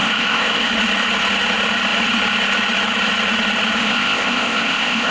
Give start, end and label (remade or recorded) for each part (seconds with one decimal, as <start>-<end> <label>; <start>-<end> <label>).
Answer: 0.0-0.7 remade; 0.7-3.8 recorded; 3.8-5.1 remade